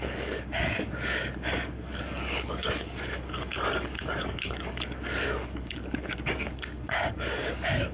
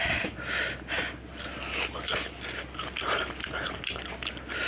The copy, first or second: first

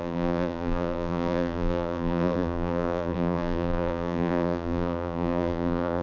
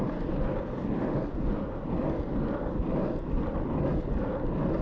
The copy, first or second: first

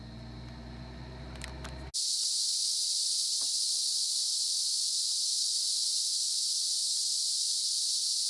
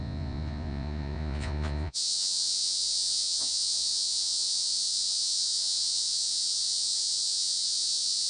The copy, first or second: second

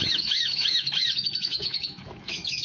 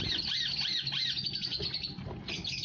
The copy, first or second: first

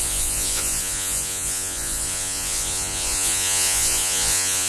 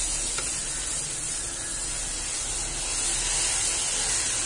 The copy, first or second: first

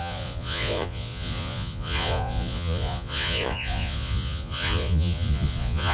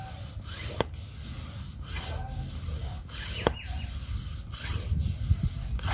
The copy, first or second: first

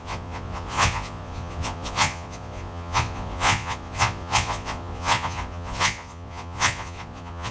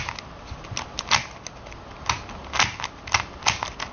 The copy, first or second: first